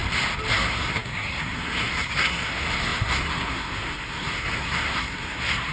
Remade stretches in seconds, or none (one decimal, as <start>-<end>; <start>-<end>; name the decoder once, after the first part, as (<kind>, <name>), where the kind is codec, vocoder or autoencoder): 0.5-5.7 (codec, SNAC)